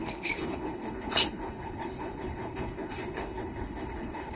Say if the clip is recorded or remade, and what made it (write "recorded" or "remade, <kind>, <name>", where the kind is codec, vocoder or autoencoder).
remade, codec, HILCodec